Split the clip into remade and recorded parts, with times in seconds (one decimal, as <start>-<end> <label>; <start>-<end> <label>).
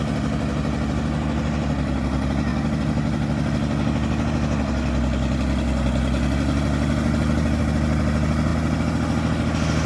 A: 0.0-9.9 recorded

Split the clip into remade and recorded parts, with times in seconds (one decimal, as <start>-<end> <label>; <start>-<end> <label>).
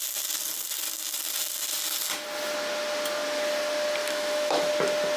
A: 0.0-4.0 recorded; 4.0-4.7 remade; 4.7-5.2 recorded